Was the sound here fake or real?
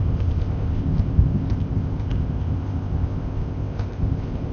fake